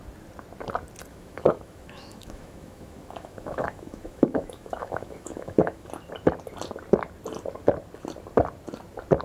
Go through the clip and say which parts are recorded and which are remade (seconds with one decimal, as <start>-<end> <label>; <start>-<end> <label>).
0.0-1.1 recorded; 1.1-5.9 remade; 5.9-9.2 recorded